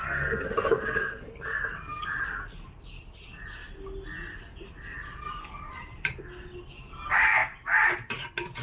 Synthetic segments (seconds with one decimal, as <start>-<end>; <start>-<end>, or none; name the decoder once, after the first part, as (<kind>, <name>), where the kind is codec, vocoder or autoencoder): 0.0-1.3 (codec, SNAC)